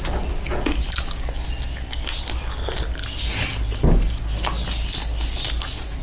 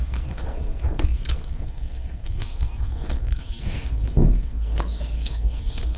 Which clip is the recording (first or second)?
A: first